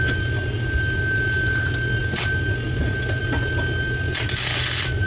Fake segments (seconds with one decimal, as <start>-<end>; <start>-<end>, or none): none